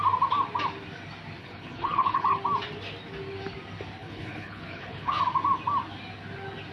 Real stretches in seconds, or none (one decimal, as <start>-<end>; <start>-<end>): 0.0-1.4; 2.4-4.0; 5.2-6.7